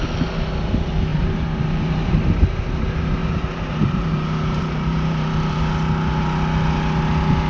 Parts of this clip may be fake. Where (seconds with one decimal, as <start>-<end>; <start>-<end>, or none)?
1.1-2.6; 3.2-5.6